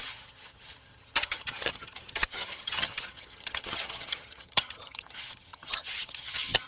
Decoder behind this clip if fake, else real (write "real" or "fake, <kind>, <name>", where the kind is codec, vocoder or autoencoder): fake, vocoder, HiFi-GAN